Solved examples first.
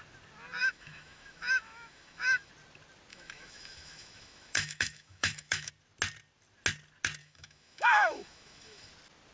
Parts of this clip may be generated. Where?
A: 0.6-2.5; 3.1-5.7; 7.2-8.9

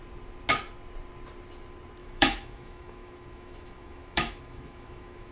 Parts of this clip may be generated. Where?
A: 2.0-5.3

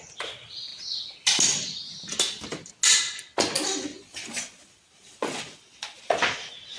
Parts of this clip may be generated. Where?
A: 3.9-6.2

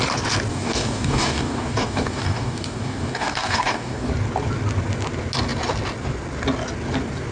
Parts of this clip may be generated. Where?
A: 0.5-4.1

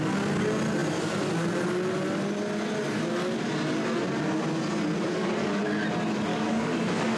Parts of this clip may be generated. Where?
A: 5.1-5.6; 6.3-7.2

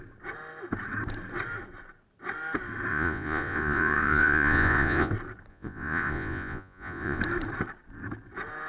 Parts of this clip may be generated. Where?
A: 2.9-5.1; 5.5-7.2

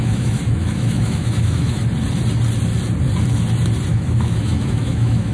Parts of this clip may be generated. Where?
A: 0.0-1.8; 3.9-5.3